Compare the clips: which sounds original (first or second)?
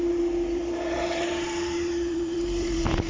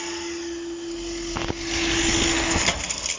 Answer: second